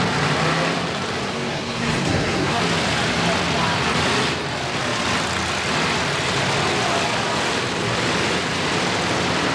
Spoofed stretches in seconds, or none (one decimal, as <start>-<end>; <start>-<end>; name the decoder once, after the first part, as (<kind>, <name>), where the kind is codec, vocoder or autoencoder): 1.3-2.6 (codec, SNAC)